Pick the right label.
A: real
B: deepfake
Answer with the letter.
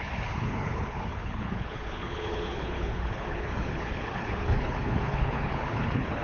B